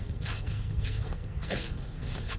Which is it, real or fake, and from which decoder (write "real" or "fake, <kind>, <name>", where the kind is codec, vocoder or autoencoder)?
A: fake, codec, SNAC